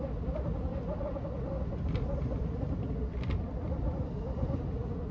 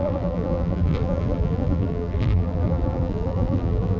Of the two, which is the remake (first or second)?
second